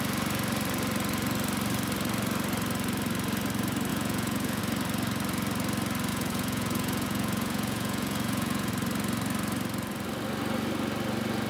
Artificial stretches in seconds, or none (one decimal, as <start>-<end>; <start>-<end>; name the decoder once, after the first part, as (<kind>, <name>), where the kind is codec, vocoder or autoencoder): 3.9-4.6 (vocoder, Vocos); 6.1-8.7